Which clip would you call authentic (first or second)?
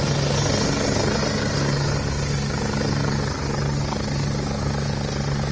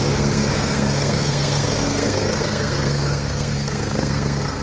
first